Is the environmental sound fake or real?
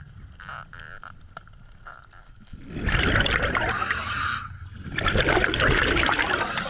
real